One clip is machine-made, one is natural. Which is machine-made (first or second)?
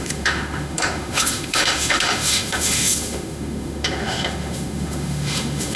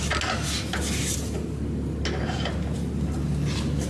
first